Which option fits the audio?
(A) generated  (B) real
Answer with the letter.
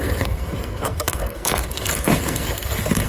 A